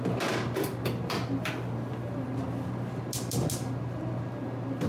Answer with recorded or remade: recorded